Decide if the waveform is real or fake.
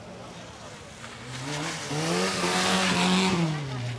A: real